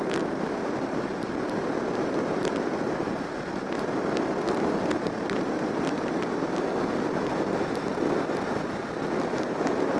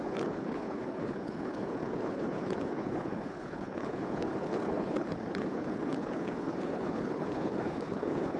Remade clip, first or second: second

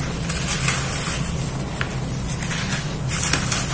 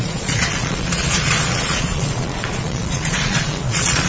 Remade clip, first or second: second